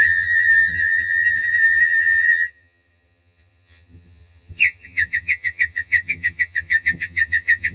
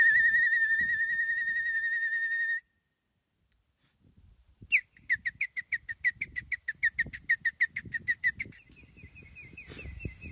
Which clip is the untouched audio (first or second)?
second